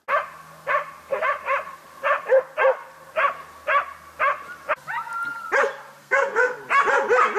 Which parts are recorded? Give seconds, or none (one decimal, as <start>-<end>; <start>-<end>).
0.0-6.0; 6.6-7.4